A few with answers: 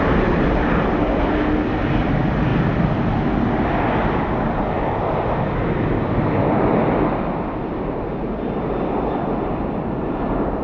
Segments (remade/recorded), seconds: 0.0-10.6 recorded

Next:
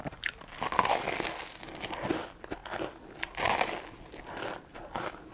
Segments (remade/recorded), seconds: 0.0-5.3 recorded